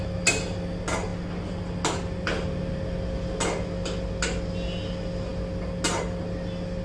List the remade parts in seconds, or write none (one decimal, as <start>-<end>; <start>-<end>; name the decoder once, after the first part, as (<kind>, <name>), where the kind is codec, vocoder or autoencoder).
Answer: none